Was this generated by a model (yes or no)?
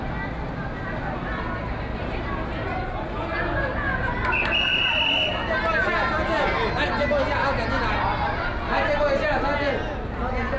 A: no